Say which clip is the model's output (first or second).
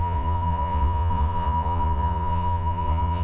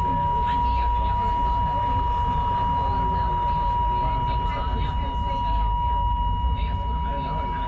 first